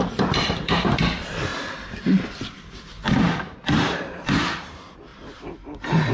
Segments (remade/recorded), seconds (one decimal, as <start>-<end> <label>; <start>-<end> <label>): 0.0-5.1 remade; 5.1-6.1 recorded